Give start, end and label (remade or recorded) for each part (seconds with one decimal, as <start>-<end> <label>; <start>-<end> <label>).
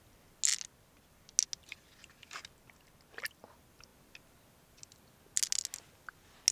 0.0-6.5 recorded